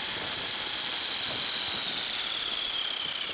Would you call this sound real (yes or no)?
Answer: yes